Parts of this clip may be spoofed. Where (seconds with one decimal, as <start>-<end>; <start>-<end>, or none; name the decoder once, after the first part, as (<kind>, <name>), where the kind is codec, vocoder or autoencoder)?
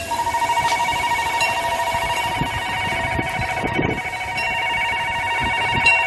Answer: 0.8-2.2 (vocoder, BigVGAN v2)